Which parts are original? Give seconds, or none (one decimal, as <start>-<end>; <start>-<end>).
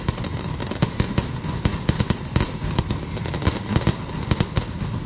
0.0-5.1